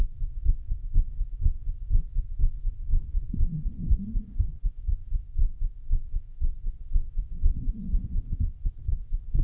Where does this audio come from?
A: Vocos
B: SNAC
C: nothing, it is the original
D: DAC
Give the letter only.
B